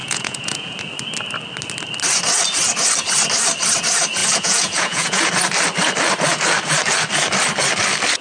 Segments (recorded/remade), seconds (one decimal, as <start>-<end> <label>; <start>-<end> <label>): 0.0-0.8 remade; 0.8-4.2 recorded; 4.2-5.3 remade; 5.3-8.2 recorded